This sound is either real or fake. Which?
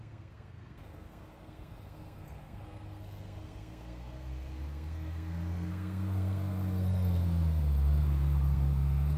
fake